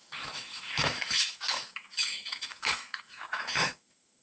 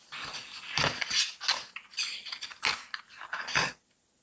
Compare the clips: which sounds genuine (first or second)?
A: second